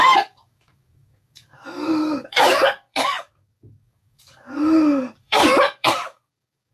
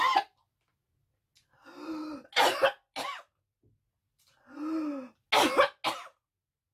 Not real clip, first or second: first